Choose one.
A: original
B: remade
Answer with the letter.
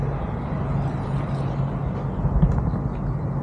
A